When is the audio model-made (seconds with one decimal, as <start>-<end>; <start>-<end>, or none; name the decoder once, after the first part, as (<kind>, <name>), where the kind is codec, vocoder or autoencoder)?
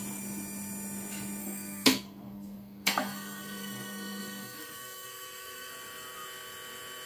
1.4-5.7 (codec, SNAC)